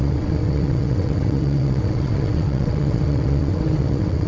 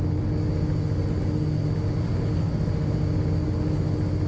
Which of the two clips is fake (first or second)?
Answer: first